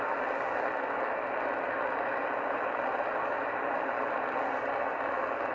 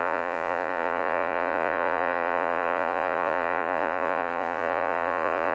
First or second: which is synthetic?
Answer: second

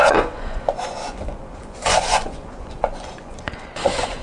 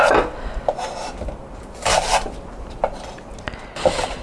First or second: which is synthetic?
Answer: first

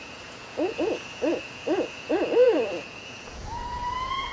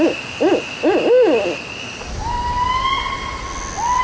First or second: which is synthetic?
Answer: first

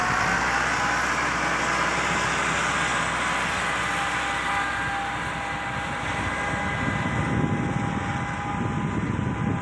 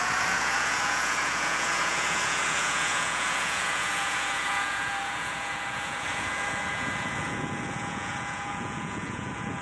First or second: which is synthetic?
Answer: second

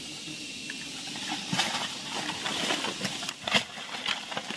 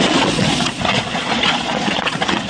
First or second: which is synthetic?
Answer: second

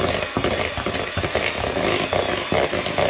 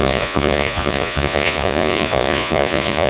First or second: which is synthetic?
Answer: second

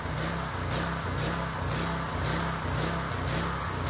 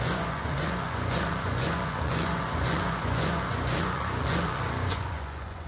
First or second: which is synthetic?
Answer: second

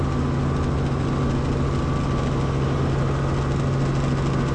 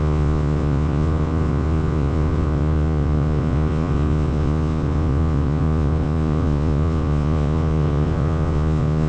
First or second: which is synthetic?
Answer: second